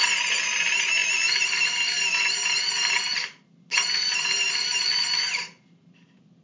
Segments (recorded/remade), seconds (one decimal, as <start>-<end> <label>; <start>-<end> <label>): 0.0-6.4 recorded